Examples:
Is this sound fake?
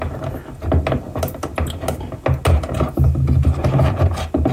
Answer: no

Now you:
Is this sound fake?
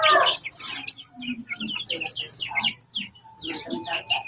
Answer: no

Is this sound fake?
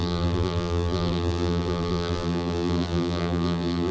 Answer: yes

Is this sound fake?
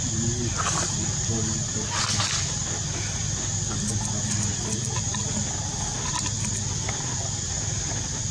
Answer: no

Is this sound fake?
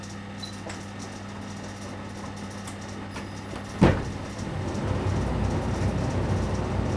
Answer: no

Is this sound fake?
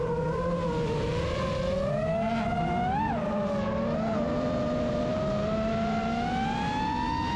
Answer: no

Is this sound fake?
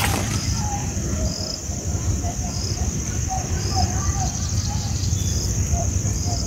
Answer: yes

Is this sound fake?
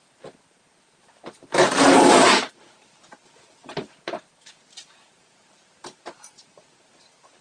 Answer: yes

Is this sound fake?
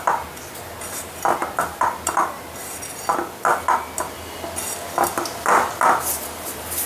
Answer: no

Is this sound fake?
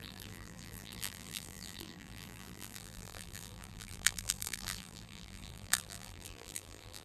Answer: yes